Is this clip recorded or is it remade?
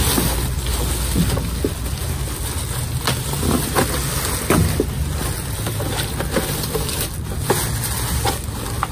recorded